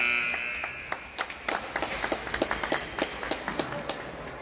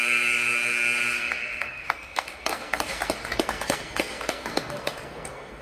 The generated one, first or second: second